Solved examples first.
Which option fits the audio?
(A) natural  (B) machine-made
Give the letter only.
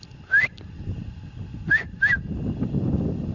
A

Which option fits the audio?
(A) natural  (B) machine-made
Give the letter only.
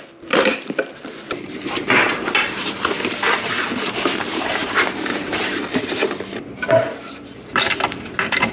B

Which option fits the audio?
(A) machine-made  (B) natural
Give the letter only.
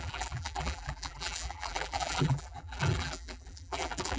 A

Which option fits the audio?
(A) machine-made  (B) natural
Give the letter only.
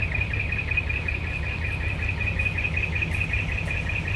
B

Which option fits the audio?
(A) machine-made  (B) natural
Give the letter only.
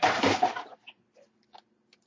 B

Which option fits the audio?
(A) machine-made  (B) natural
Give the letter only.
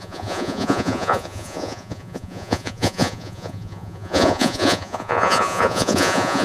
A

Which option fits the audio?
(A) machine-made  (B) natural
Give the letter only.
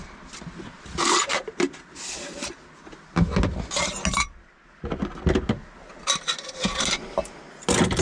B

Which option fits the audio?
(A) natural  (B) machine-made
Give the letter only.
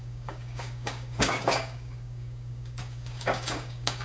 B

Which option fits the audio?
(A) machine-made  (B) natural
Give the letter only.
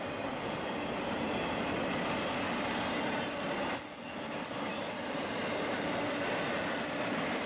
B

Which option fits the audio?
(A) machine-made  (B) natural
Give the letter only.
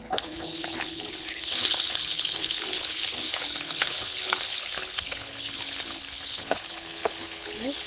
A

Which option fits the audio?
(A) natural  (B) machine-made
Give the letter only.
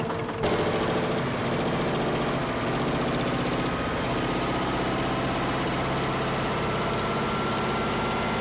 A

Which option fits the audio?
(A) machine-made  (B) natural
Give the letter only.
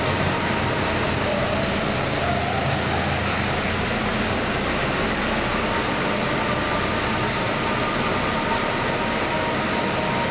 B